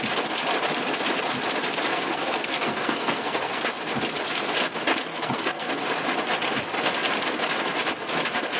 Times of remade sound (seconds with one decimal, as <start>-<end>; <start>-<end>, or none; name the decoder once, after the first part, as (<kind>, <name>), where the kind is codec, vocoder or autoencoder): 1.9-3.6 (codec, SNAC); 5.1-5.7